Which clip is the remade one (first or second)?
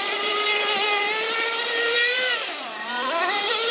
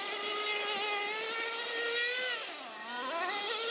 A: first